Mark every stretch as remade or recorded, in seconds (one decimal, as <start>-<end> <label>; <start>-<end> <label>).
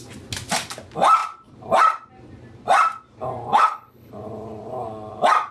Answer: 0.0-3.5 recorded; 3.5-4.1 remade; 4.1-5.5 recorded